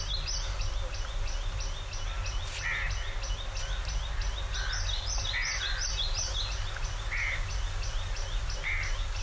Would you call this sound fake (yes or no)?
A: no